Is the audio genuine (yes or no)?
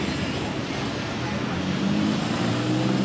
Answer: yes